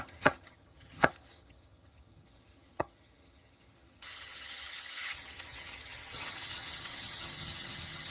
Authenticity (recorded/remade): remade